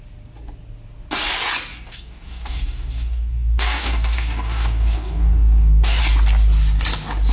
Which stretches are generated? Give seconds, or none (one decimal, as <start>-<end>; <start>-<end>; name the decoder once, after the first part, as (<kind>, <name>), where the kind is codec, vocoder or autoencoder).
1.7-6.0 (codec, DAC)